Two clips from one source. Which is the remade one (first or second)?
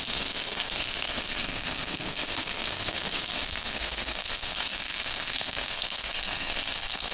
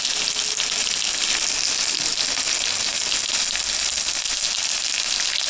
first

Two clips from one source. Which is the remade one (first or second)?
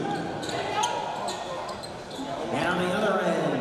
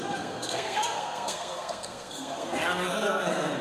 second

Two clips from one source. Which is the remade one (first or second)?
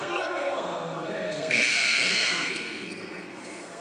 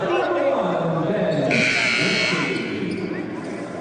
first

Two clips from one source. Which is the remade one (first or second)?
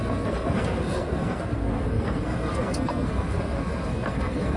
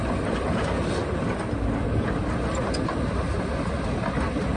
first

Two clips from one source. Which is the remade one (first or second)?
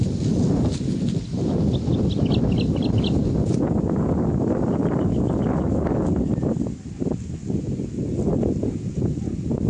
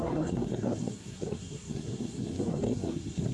second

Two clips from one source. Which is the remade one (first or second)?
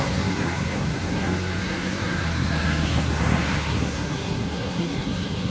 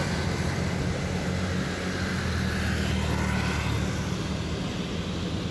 first